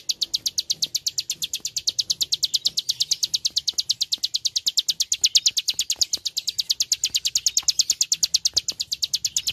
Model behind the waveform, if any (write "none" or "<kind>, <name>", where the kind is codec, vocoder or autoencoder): none